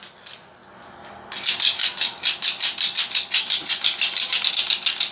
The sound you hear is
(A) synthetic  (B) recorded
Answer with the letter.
B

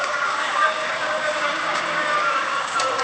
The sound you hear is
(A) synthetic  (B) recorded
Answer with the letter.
A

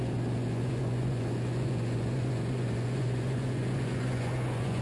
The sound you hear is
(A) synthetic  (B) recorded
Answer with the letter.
A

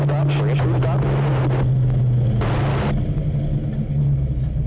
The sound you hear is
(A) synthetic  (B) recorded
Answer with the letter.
B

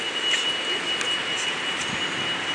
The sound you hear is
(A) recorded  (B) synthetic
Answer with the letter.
A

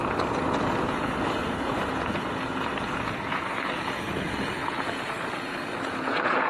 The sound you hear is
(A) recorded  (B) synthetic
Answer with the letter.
B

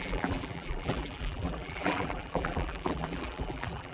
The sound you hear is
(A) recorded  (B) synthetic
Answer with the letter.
B